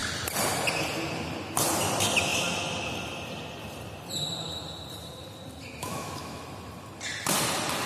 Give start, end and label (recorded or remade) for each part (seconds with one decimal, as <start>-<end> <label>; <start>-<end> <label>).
0.0-5.8 recorded; 5.8-6.4 remade; 6.4-7.9 recorded